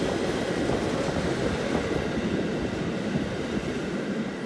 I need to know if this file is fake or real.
real